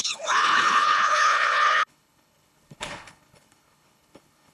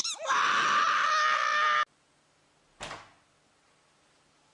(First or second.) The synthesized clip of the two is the first